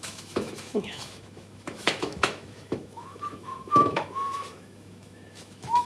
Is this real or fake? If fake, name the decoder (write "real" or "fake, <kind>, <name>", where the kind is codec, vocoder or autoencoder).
fake, autoencoder, DAC-VAE